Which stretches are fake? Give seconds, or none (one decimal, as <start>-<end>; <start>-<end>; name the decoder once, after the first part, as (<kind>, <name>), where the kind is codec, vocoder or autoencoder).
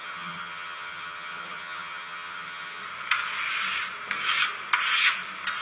0.0-2.8 (vocoder, HiFi-GAN)